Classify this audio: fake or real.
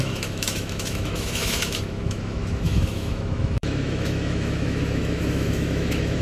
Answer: fake